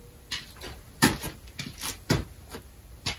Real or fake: fake